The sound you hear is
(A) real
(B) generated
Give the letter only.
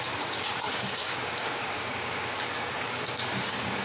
B